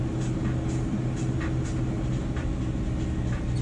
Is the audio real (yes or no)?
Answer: yes